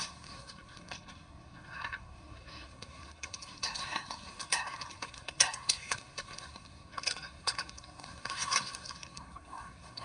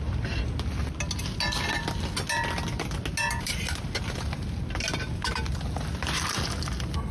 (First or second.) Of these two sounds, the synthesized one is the first